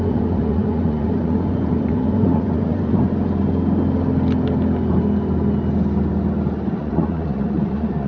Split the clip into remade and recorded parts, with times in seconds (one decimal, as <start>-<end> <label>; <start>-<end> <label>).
0.0-3.0 remade; 3.0-6.7 recorded; 6.7-8.1 remade

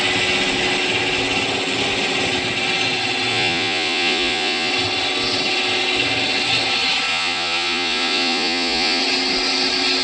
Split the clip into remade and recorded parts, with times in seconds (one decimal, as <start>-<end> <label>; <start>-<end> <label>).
0.0-3.3 recorded; 3.3-4.7 remade; 4.7-7.1 recorded; 7.1-9.0 remade; 9.0-10.0 recorded

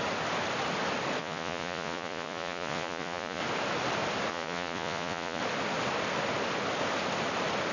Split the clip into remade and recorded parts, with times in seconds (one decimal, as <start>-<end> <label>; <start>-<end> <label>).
0.0-1.2 recorded; 1.2-3.4 remade; 3.4-4.3 recorded; 4.3-5.4 remade; 5.4-7.7 recorded